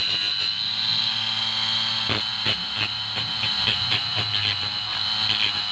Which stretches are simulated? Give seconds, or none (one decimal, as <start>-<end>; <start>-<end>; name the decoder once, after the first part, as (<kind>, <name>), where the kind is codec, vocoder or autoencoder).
2.3-4.2 (vocoder, BigVGAN v2)